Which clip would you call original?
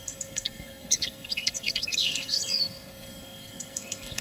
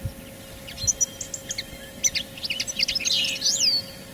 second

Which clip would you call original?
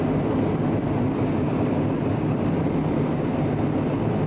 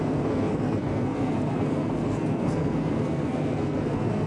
first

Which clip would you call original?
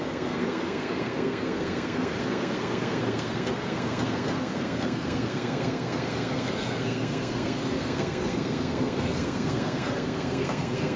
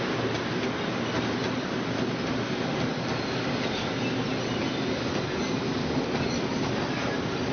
second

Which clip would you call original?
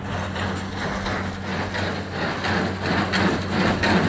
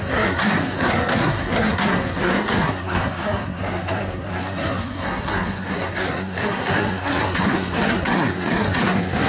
first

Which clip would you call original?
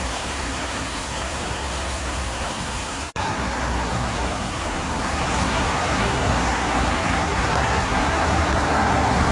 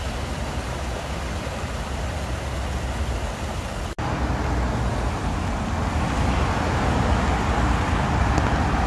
second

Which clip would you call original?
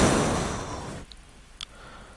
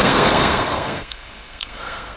first